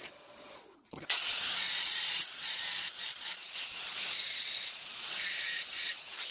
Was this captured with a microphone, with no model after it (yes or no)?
no